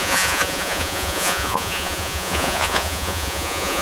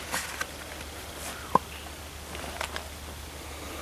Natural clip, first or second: second